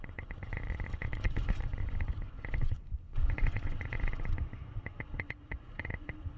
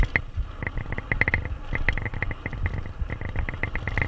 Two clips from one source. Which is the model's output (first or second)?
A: first